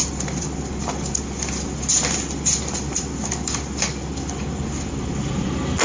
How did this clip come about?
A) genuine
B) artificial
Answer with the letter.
A